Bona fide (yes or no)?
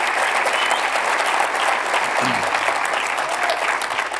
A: yes